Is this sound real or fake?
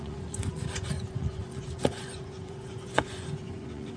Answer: fake